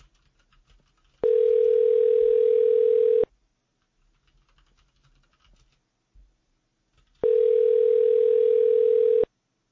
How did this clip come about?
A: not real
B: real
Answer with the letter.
B